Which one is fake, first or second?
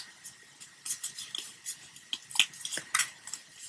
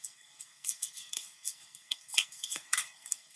second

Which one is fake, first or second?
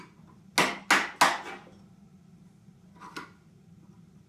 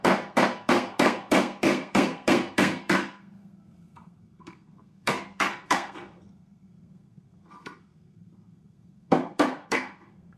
second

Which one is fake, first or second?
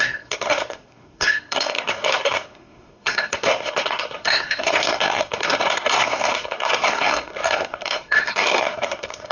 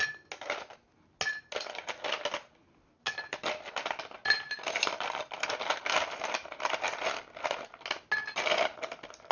first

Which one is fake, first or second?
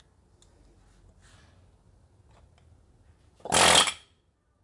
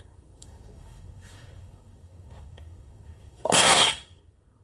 second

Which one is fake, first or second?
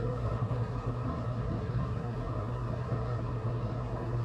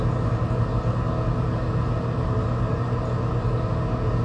first